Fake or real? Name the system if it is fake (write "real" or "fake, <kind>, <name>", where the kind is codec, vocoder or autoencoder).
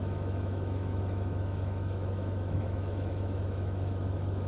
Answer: fake, autoencoder, DAC-VAE